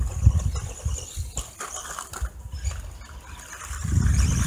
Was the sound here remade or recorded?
recorded